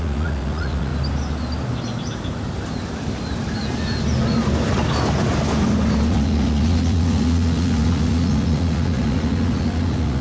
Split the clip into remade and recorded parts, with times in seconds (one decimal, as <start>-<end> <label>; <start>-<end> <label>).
0.0-0.9 remade; 0.9-6.1 recorded; 6.1-10.2 remade